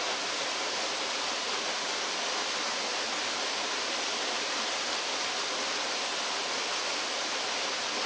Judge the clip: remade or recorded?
recorded